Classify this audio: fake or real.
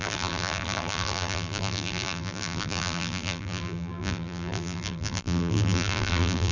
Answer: fake